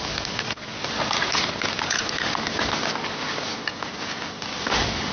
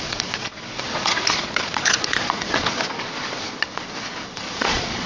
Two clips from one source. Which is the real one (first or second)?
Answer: first